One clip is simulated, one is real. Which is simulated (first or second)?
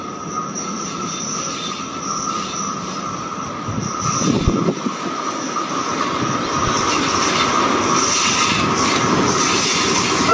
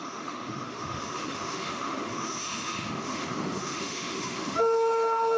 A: second